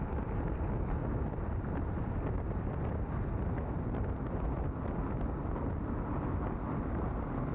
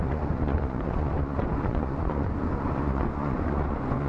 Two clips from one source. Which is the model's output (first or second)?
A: second